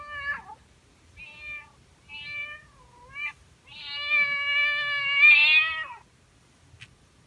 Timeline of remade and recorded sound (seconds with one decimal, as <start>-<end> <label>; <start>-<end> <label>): 0.0-7.3 recorded